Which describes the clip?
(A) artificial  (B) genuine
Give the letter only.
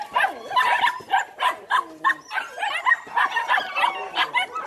B